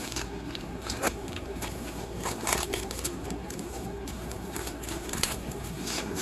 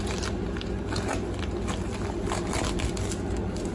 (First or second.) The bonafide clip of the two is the second